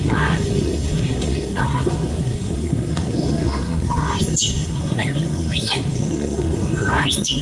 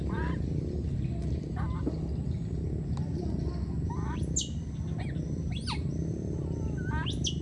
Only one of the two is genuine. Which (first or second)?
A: second